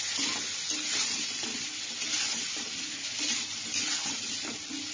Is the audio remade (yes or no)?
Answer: no